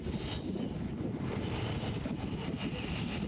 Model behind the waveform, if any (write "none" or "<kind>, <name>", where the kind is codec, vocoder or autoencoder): none